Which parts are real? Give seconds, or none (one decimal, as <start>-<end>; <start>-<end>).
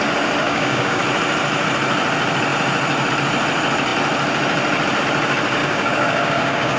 0.0-0.4; 1.0-5.6